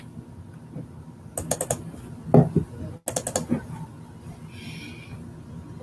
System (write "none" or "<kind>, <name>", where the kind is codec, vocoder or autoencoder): none